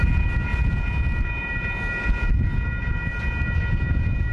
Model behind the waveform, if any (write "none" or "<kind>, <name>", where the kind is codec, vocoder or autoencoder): none